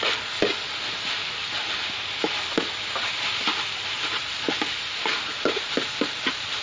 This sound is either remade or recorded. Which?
recorded